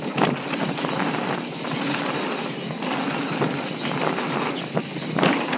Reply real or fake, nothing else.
real